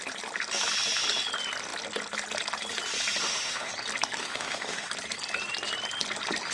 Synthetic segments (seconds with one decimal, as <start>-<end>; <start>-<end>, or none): 3.2-3.7; 4.2-4.9